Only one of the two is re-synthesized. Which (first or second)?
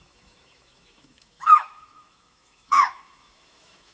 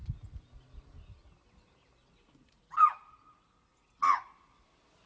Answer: first